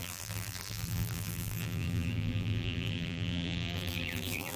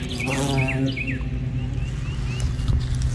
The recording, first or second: second